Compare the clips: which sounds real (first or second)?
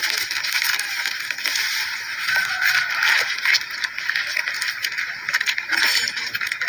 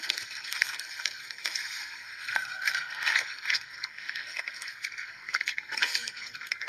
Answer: first